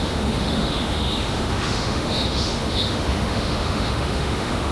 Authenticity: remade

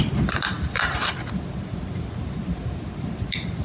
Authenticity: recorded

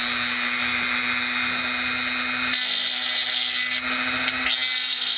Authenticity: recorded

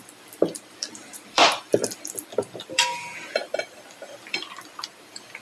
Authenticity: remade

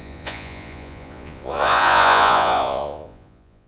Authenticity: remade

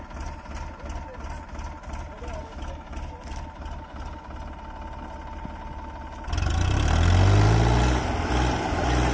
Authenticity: recorded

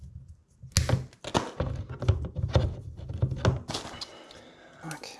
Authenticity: recorded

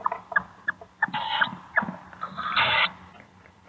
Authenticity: remade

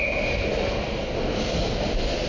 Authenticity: recorded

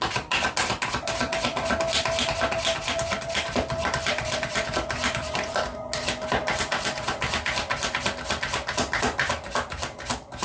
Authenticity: recorded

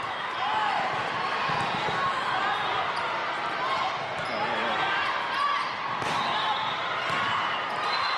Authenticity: remade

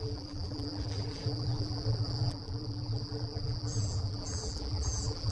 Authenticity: remade